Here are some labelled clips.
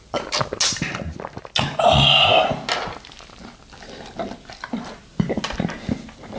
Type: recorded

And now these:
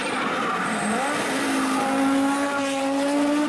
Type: recorded